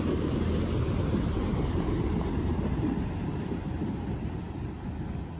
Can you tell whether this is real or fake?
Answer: real